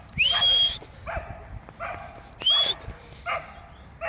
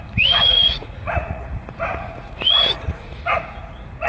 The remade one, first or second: second